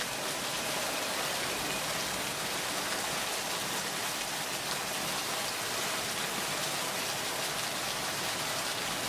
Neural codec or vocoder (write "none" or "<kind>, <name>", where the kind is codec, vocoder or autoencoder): none